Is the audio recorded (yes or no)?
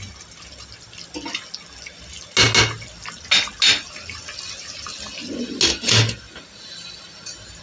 yes